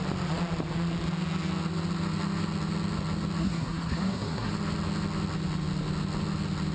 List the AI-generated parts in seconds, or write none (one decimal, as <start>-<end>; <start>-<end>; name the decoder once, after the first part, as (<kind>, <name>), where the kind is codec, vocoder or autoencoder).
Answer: 3.4-4.5 (codec, SNAC)